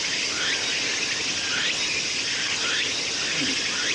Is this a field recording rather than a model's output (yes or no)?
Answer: yes